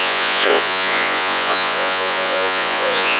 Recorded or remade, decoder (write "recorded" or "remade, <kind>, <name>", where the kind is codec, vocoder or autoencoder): remade, vocoder, Vocos